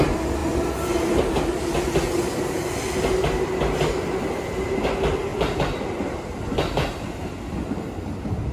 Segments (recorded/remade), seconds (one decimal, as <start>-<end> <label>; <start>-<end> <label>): 0.0-5.3 recorded; 5.3-6.5 remade; 6.5-8.5 recorded